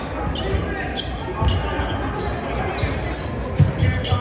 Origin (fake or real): real